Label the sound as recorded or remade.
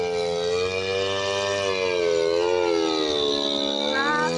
recorded